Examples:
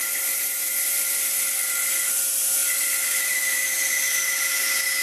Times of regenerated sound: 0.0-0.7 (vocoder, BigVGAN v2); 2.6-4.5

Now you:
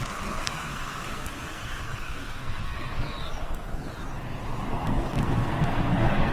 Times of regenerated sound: 0.0-3.9 (codec, SNAC); 4.7-6.3

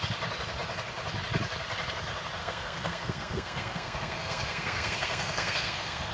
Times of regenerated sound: 2.4-6.1 (codec, SNAC)